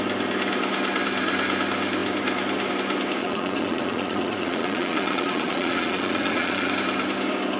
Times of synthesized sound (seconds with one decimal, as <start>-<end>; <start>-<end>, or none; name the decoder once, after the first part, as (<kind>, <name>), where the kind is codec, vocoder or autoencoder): 3.2-6.7 (vocoder, Vocos)